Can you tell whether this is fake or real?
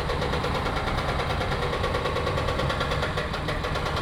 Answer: fake